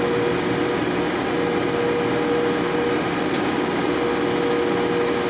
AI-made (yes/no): no